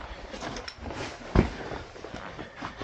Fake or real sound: real